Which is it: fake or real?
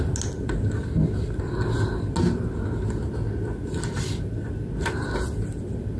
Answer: real